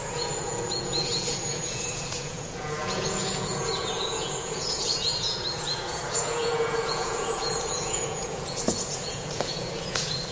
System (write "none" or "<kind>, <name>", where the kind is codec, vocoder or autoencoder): vocoder, Vocos